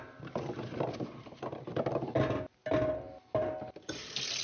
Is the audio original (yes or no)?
yes